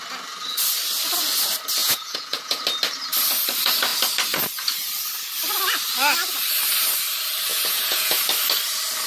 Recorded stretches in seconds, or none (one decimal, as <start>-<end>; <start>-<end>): 0.0-1.8; 2.6-7.5; 8.2-9.1